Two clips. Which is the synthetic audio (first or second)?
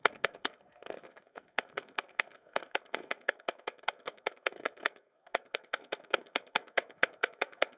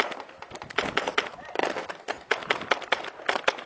first